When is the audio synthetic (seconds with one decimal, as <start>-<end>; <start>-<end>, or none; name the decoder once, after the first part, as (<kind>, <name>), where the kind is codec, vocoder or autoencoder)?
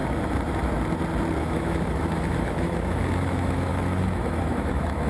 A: 1.4-5.1 (autoencoder, DAC-VAE)